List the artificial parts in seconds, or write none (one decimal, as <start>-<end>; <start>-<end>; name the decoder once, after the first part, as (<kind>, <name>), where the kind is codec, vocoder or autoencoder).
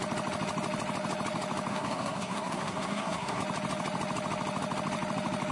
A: 1.7-3.4 (codec, SNAC)